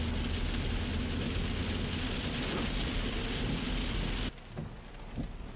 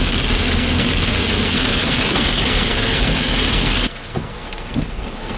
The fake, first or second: second